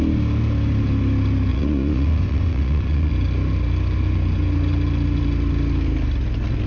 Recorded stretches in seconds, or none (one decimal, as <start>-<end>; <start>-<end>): 0.0-1.5; 3.1-6.7